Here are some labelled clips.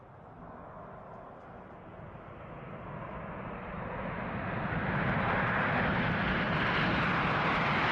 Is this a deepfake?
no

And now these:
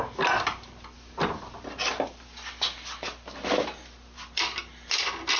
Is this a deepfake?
no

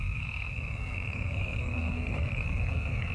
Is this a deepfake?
yes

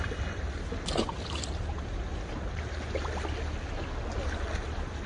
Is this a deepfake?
no